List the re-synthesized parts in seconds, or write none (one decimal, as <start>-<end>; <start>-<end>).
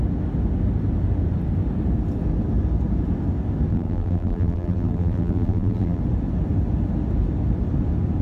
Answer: 3.7-6.0